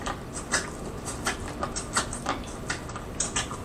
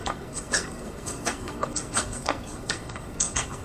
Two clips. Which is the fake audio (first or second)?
second